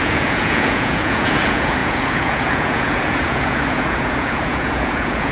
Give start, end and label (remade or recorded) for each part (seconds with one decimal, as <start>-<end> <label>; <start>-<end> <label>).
0.0-5.3 remade